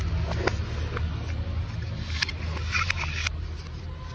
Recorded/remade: recorded